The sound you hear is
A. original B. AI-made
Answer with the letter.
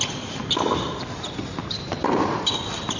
A